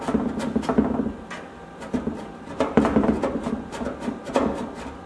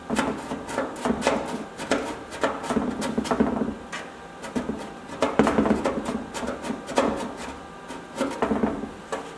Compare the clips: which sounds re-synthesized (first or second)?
first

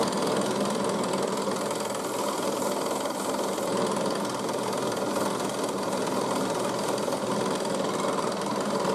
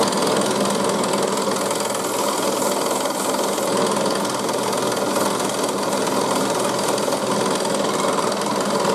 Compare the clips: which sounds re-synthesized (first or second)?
first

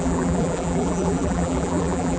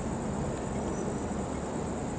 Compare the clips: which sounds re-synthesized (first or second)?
first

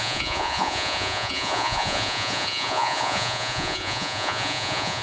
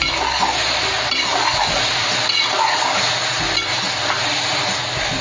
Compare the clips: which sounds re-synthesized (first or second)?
first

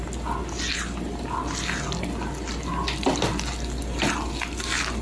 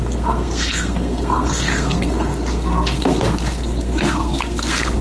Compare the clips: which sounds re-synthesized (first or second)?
second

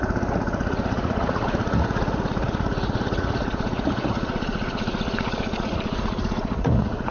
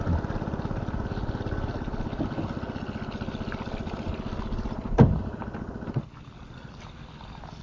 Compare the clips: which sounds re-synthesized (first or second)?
first